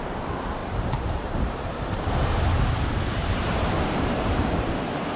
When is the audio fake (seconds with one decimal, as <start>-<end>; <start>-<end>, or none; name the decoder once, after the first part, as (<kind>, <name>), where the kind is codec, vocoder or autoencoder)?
0.6-2.0 (vocoder, BigVGAN v2); 3.2-5.2